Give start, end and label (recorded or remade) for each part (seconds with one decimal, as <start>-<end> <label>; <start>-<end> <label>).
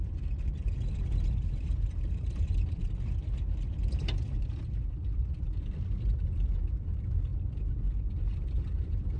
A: 0.0-7.3 remade; 7.3-8.1 recorded; 8.1-9.2 remade